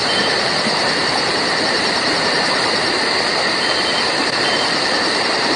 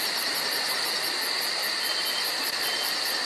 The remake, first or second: first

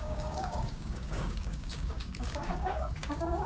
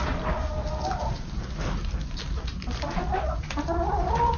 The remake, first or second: first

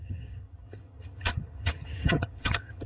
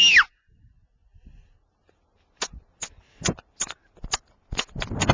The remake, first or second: first